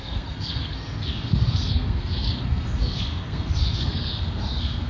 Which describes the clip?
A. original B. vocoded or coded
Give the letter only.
B